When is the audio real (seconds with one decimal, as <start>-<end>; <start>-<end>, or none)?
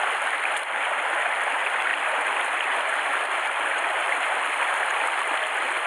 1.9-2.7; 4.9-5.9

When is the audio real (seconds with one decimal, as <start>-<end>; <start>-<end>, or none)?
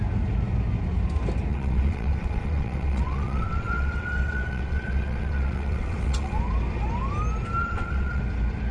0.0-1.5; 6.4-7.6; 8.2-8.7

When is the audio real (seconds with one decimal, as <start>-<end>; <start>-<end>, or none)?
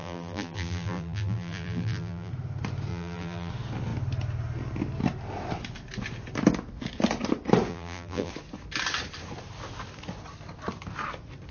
2.3-2.9; 3.5-7.7; 8.3-11.5